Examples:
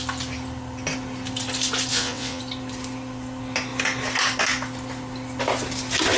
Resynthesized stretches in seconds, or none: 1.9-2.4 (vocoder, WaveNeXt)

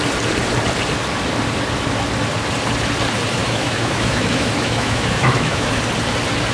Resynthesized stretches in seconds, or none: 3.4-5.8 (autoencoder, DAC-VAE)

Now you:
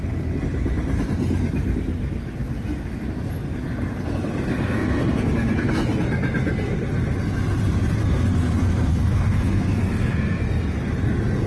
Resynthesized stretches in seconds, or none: 4.5-5.7 (codec, SNAC); 8.0-10.4

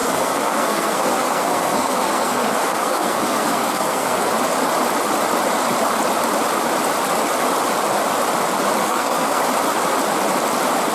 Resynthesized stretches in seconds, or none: 0.0-4.3 (codec, SNAC); 8.8-9.4